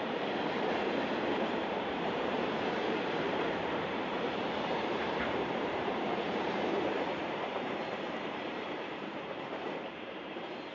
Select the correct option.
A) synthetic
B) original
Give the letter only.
A